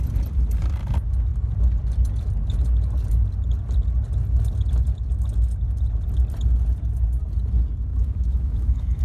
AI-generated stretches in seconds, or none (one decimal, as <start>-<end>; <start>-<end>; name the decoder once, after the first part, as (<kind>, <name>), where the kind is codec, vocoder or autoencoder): 7.9-9.0 (autoencoder, DAC-VAE)